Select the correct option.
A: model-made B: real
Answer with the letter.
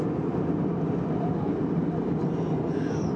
B